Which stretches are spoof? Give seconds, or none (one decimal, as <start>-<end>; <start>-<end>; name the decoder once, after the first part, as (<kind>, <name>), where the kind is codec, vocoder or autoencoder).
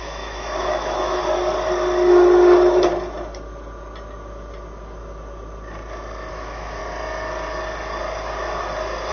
0.0-1.2 (autoencoder, DAC-VAE); 6.3-6.8